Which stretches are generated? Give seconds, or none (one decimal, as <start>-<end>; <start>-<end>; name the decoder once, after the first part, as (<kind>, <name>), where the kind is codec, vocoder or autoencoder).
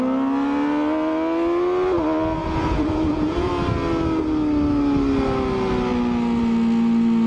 2.4-3.5 (vocoder, Vocos)